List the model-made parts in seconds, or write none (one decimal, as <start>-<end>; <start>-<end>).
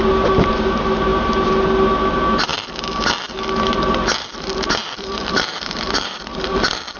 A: 1.1-1.6; 4.8-7.0